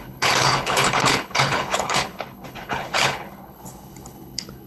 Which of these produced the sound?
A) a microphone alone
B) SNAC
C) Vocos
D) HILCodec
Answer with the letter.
D